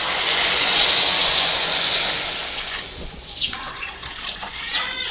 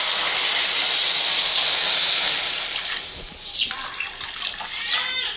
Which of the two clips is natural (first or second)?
second